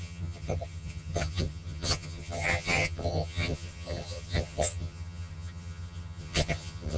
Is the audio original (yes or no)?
no